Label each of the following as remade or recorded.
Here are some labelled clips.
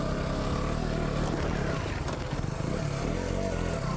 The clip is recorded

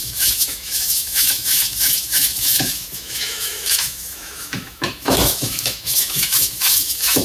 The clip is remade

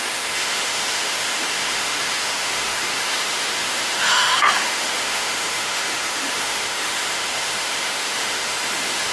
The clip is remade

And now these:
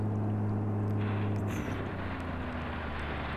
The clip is recorded